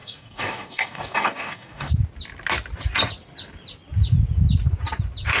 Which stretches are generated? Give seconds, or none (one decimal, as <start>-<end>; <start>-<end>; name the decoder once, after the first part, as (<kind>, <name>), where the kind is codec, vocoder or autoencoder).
0.0-1.9 (codec, DAC)